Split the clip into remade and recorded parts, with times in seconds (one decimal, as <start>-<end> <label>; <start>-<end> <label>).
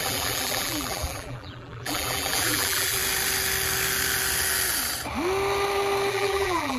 0.0-3.0 remade; 3.0-6.1 recorded; 6.1-6.8 remade